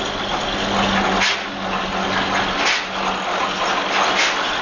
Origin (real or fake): real